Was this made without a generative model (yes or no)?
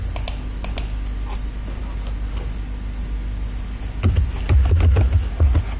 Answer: yes